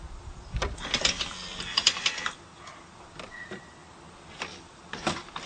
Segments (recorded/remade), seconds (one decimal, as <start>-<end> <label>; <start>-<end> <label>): 0.0-0.6 remade; 0.6-1.7 recorded; 1.7-3.8 remade; 3.8-4.4 recorded; 4.4-5.5 remade